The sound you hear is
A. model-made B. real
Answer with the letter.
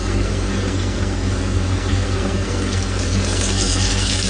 A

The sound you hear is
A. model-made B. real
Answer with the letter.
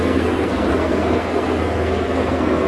A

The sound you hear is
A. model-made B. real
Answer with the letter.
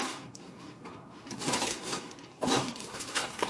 A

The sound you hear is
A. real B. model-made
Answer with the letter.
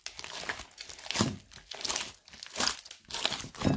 A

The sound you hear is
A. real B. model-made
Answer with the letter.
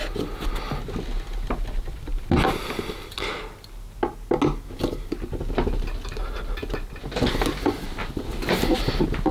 A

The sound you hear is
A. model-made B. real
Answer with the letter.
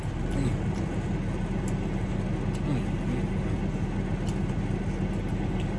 B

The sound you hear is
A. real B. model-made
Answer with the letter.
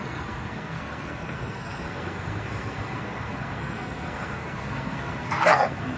B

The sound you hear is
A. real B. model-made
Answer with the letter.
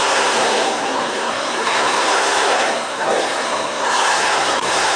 B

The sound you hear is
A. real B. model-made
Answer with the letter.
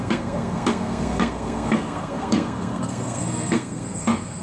B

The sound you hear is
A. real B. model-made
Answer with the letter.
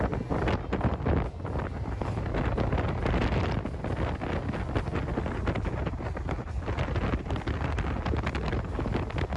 A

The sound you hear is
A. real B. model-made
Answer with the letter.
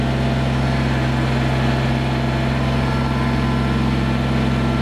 A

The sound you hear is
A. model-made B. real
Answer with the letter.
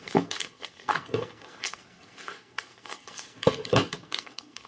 A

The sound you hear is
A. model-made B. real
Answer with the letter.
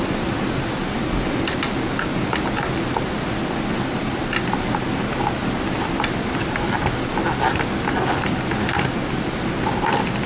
B